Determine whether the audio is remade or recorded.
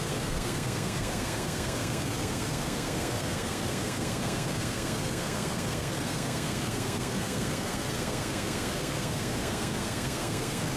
remade